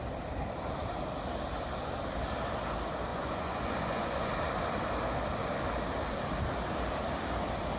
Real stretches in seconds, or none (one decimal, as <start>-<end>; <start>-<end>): 0.0-3.1; 4.3-7.8